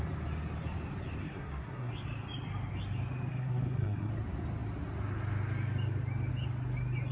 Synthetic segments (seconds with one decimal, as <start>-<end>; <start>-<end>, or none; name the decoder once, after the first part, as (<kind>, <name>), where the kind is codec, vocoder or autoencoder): 1.2-1.9 (codec, SNAC); 3.3-4.1